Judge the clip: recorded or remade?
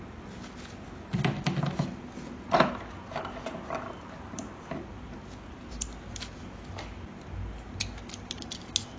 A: recorded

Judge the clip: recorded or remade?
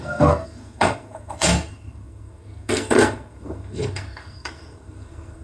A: remade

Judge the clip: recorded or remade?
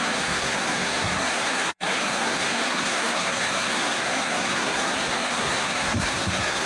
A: remade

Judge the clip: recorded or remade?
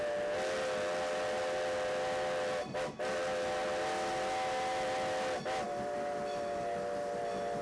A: recorded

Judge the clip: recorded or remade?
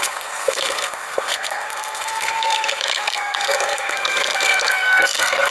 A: remade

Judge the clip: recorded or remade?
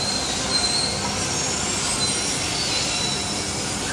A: recorded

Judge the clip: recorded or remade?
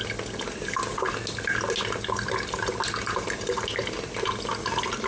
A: recorded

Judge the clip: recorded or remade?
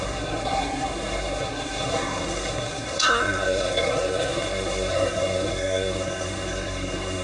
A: remade